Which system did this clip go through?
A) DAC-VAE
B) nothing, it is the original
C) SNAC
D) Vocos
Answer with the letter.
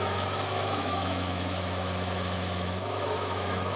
A